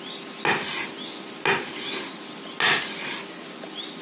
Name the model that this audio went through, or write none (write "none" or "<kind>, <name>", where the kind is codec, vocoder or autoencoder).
none